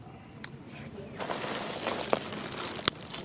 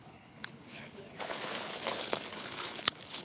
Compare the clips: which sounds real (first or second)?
first